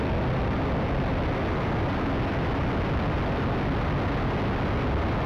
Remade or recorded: recorded